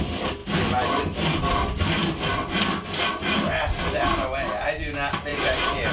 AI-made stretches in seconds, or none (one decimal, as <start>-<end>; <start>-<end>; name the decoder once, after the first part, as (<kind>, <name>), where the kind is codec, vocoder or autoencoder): none